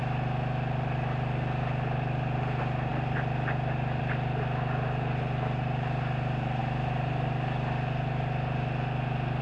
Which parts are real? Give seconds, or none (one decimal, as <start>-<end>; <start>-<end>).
0.0-9.4